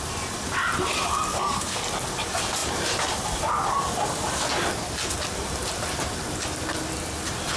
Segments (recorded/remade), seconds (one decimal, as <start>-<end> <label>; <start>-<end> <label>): 0.0-1.3 recorded; 1.3-1.8 remade; 1.8-7.6 recorded